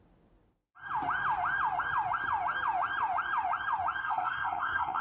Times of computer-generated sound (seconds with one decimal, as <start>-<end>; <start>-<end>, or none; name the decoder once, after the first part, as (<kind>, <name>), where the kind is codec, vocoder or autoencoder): 4.0-5.0 (codec, SNAC)